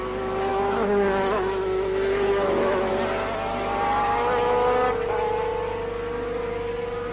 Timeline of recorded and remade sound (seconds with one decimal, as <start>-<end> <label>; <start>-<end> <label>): 0.0-0.5 recorded; 0.5-2.9 remade; 2.9-7.1 recorded